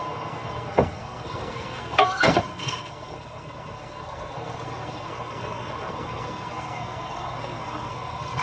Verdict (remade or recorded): remade